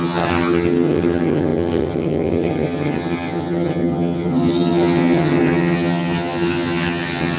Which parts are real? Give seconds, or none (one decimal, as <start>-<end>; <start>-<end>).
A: none